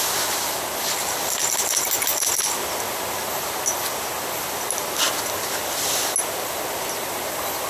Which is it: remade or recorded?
recorded